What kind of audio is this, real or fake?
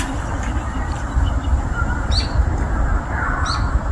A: real